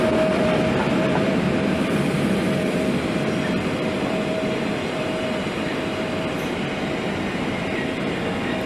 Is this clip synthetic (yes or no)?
yes